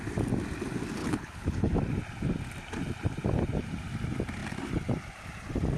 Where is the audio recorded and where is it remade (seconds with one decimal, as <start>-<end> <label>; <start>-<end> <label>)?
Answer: 0.0-1.0 recorded; 1.0-1.7 remade; 1.7-5.8 recorded